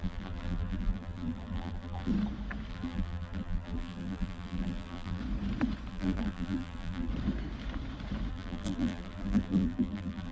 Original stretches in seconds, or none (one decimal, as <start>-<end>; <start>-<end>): 2.1-2.7; 5.2-5.9; 7.1-8.3